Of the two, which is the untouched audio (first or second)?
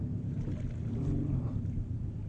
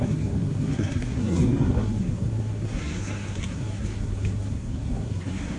first